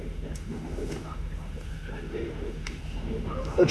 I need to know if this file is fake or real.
fake